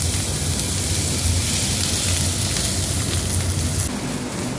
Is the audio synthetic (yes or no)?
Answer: no